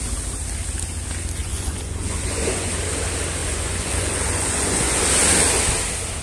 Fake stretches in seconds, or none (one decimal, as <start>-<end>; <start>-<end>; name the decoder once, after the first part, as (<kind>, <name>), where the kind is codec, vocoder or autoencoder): 1.4-2.7 (vocoder, Vocos); 3.4-5.0